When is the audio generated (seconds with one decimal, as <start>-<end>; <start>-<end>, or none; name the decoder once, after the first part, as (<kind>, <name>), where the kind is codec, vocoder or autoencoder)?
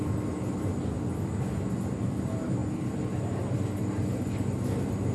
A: none